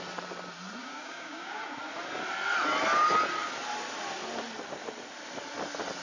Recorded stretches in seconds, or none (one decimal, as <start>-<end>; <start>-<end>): 0.0-0.8; 1.6-6.0